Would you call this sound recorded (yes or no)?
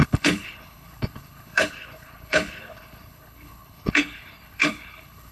no